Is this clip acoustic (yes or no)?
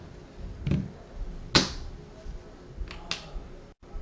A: yes